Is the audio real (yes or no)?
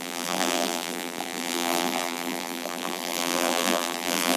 no